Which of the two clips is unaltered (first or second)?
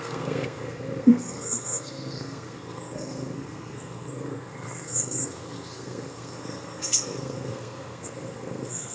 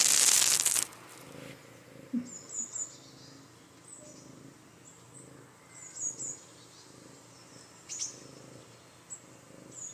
second